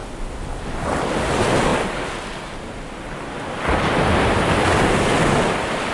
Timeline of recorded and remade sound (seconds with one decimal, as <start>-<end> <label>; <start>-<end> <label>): 0.0-5.9 recorded